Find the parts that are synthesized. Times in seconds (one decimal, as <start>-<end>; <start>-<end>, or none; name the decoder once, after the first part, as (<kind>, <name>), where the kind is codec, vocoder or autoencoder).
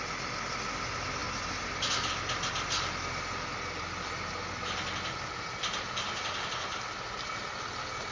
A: none